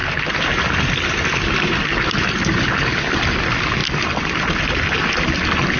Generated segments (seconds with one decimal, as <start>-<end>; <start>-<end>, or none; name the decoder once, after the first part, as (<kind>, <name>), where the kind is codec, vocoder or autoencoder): none